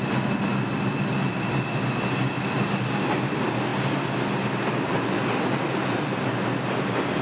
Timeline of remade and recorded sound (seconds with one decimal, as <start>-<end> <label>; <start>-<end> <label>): 0.0-7.2 recorded